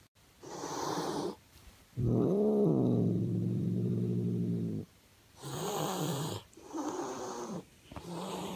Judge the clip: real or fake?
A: fake